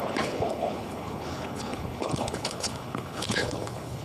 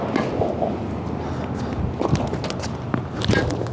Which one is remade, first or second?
first